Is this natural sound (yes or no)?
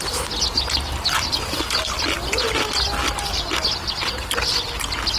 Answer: yes